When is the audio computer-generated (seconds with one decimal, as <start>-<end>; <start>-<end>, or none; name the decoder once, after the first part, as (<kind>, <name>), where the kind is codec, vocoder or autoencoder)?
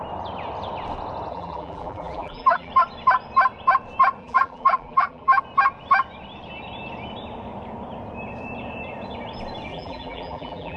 1.3-2.7 (vocoder, BigVGAN v2); 4.2-5.4; 9.7-10.8